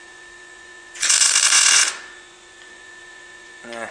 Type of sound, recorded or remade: remade